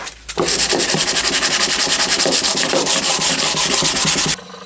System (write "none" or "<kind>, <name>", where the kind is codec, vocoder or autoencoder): none